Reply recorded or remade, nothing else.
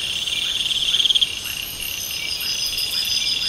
recorded